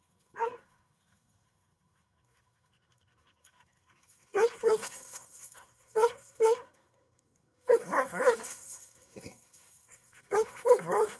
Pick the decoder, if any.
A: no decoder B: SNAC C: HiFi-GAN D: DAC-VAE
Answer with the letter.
B